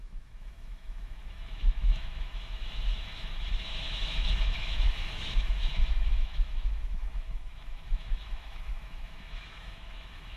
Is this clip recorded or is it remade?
remade